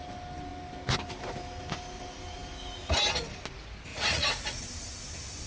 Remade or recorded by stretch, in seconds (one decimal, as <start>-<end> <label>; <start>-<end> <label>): 0.0-3.9 recorded; 3.9-4.6 remade; 4.6-5.5 recorded